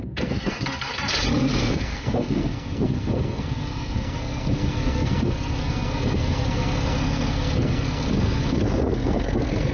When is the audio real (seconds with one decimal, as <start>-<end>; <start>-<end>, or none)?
0.9-1.6